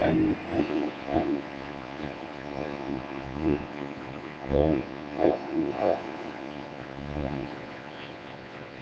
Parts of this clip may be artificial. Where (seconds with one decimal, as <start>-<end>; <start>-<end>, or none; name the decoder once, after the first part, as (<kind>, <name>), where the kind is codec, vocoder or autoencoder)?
0.6-8.8 (vocoder, Vocos)